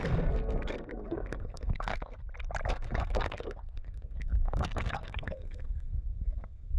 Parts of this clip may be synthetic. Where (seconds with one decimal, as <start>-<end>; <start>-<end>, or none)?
0.0-2.2; 2.7-6.8